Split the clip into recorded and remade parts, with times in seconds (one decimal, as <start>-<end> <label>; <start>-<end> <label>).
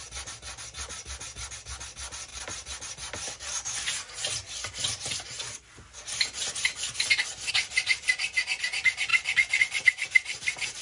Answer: 0.0-10.8 recorded